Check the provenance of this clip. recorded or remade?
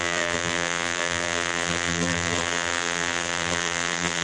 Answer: remade